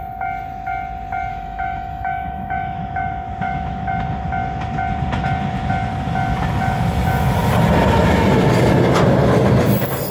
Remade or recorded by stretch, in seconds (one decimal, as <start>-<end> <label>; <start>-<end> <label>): 0.0-1.3 recorded; 1.3-3.9 remade; 3.9-10.1 recorded